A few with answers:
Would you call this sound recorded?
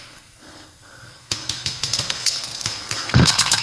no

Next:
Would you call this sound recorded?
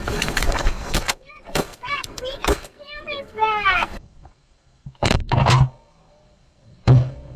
no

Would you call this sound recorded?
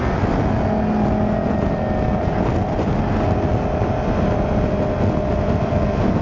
yes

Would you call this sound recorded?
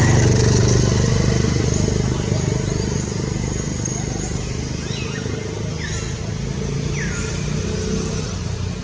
yes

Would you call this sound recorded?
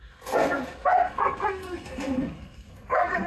no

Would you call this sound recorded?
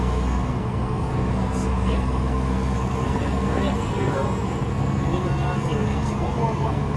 no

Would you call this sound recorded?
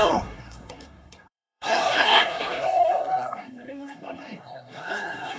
no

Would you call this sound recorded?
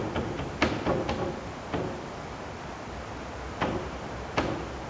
yes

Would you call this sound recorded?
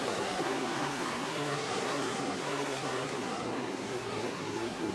no